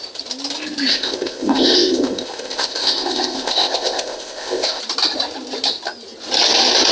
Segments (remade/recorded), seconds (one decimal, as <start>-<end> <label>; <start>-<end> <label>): 0.0-0.9 recorded; 0.9-4.8 remade; 4.8-6.9 recorded

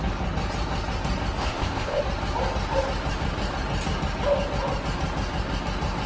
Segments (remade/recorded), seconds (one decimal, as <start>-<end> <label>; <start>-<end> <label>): 0.0-1.4 recorded; 1.4-2.0 remade; 2.0-6.1 recorded

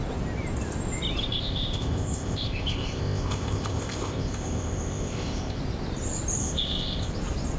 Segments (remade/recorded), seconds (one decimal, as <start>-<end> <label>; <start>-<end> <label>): 0.0-1.2 recorded; 1.2-5.6 remade; 5.6-6.4 recorded; 6.4-7.1 remade; 7.1-7.6 recorded